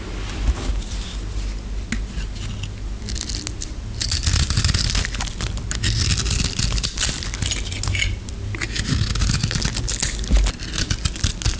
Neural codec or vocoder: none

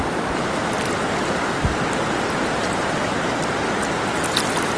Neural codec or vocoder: none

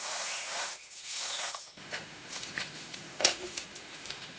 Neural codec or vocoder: autoencoder, DAC-VAE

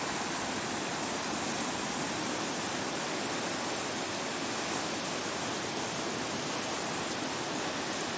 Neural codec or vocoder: none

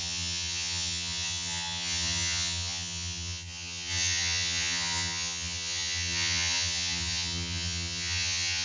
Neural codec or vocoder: vocoder, HiFi-GAN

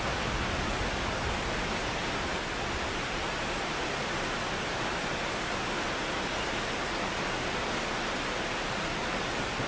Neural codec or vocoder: none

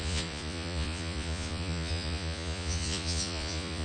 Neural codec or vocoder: vocoder, Vocos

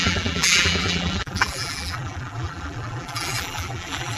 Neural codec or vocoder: vocoder, BigVGAN v2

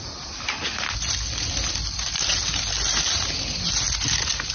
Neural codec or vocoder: none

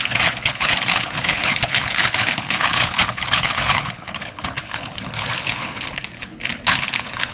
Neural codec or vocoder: codec, HILCodec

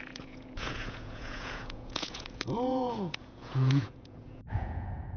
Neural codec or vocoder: vocoder, Vocos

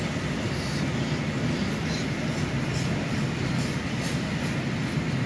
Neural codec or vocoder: none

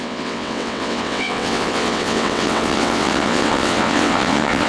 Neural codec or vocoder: vocoder, WaveNeXt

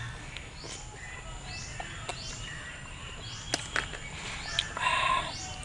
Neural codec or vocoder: none